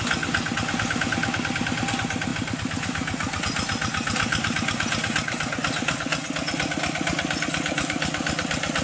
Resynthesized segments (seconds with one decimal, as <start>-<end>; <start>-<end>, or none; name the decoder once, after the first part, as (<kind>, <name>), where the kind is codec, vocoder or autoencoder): none